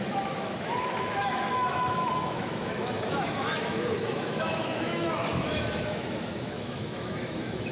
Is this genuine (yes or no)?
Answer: no